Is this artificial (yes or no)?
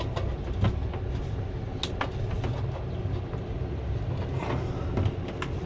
no